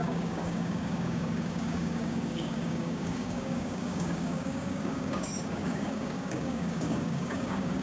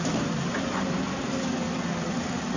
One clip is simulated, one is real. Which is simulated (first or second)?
first